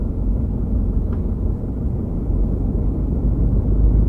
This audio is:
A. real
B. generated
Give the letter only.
A